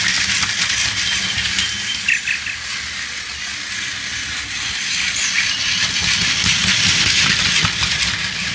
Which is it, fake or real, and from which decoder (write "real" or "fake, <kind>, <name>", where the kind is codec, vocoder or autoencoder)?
real